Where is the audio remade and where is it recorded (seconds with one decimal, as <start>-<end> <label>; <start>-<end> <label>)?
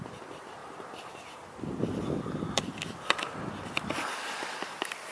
0.0-5.1 recorded